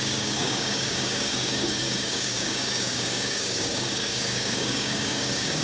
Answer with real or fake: fake